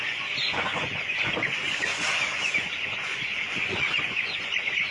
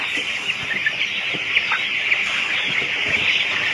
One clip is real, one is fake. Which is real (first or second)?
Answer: second